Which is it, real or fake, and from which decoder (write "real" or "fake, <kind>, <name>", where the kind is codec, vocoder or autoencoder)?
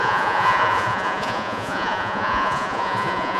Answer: fake, vocoder, Vocos